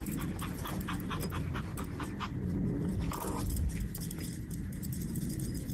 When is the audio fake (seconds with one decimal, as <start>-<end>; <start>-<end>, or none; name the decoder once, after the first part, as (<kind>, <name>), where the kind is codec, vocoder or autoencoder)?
none